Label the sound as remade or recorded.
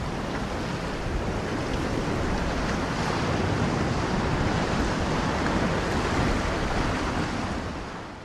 recorded